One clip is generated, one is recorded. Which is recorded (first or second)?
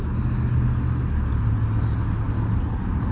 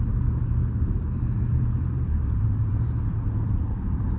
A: first